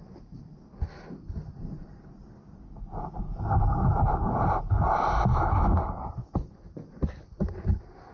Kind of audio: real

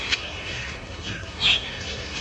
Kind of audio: fake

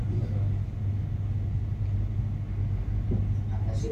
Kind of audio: real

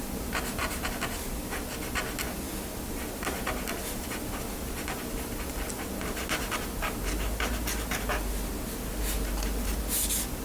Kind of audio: real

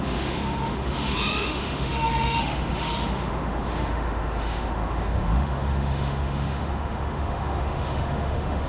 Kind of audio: fake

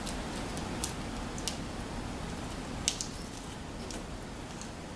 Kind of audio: real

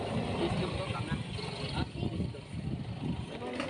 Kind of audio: real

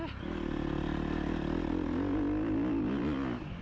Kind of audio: real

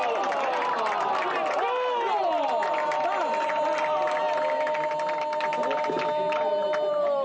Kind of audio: real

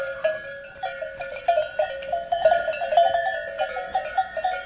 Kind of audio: real